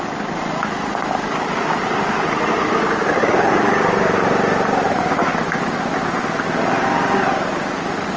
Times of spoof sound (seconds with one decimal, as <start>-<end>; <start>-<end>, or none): none